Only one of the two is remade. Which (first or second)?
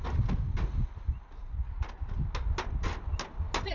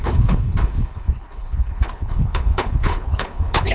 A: second